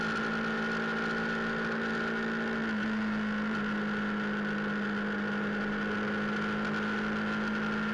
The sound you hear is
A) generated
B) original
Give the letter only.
B